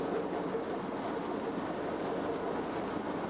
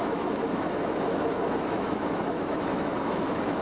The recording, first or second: first